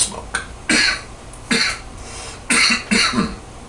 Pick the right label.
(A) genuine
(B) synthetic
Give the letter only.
A